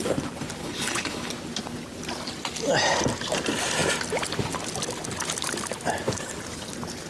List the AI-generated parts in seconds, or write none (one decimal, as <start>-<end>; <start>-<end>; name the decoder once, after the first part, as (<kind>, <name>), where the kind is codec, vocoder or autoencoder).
0.6-1.3 (codec, HILCodec)